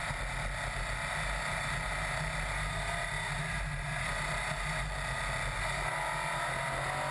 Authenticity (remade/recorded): recorded